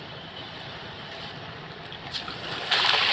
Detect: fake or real real